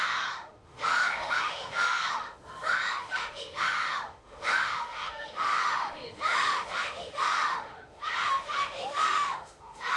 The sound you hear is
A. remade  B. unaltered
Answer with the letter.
A